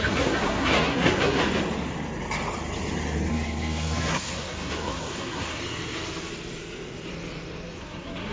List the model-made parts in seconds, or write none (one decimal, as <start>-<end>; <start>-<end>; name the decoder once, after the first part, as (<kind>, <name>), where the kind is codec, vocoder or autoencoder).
0.0-1.4 (codec, SNAC); 3.3-5.6; 7.8-8.3